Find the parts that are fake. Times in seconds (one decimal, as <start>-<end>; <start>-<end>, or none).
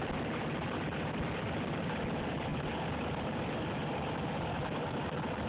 none